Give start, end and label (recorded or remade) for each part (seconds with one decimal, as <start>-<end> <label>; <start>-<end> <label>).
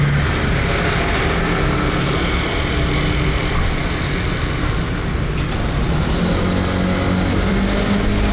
0.0-8.3 recorded